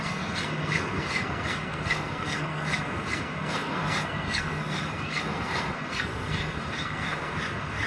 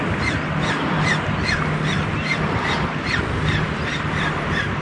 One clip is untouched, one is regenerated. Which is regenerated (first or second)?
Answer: first